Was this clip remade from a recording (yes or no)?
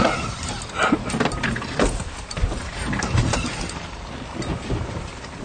no